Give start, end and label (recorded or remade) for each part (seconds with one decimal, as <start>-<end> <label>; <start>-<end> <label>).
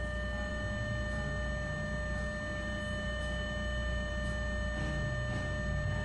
0.0-6.0 recorded